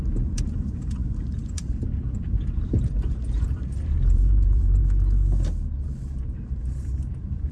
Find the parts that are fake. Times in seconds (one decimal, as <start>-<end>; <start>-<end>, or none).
0.0-4.8; 5.8-7.5